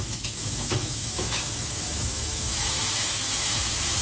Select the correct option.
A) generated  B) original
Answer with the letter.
A